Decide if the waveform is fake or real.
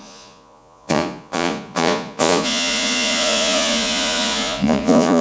fake